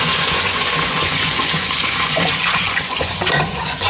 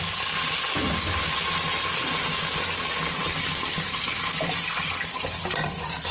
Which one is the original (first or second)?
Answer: second